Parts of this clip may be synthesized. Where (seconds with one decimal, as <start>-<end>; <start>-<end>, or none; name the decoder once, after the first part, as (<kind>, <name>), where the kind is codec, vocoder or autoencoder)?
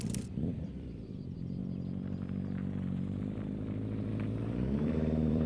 0.0-1.6 (vocoder, BigVGAN v2); 4.8-5.5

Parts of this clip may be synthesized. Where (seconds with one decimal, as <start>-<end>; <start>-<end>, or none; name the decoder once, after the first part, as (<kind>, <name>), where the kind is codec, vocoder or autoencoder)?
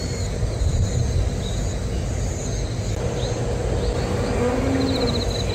none